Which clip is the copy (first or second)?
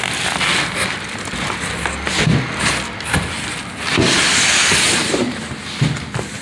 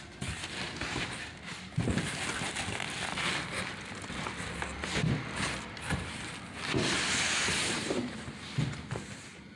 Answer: second